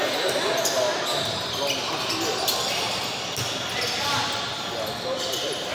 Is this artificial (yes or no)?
no